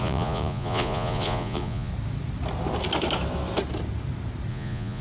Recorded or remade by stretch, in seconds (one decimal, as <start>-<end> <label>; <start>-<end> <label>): 0.0-1.9 remade; 1.9-4.5 recorded; 4.5-5.0 remade